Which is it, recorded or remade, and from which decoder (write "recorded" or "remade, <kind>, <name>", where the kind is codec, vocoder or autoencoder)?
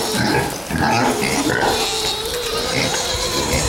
recorded